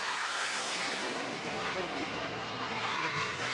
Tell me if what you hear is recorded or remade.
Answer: remade